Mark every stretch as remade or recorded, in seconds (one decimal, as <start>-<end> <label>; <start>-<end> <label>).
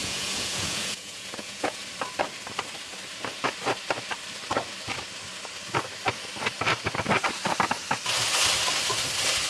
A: 0.0-1.8 remade; 1.8-9.5 recorded